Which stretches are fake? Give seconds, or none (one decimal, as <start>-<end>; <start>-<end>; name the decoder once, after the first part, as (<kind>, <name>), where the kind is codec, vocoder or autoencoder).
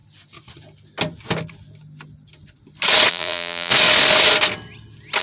3.1-3.7 (vocoder, BigVGAN v2)